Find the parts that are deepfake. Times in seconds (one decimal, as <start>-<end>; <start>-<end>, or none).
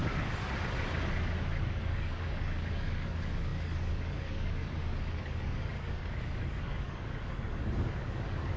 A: 1.6-8.6